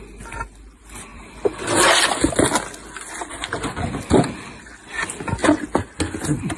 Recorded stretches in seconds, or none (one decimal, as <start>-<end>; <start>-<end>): 0.0-1.1; 1.9-6.6